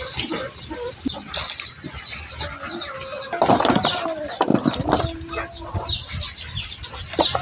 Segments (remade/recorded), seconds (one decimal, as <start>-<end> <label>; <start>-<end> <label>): 0.0-7.4 recorded